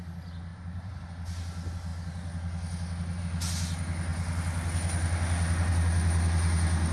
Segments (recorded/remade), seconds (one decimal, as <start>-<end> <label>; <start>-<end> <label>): 0.0-0.5 recorded; 0.5-1.0 remade; 1.0-6.9 recorded